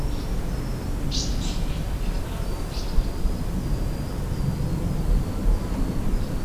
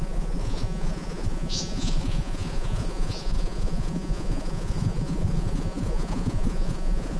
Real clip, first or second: first